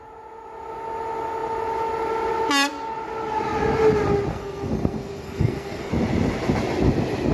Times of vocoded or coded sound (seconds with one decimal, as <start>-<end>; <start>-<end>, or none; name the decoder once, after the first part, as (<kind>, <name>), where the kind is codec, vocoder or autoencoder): 4.3-5.9 (codec, SNAC)